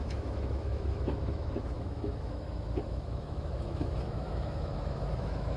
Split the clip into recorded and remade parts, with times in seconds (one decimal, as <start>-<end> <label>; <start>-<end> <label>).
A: 0.0-5.6 remade